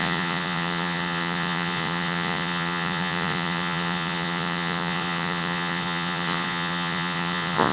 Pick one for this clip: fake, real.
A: fake